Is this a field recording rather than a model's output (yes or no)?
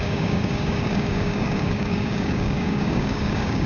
no